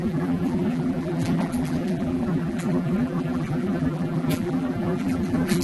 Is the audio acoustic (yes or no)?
no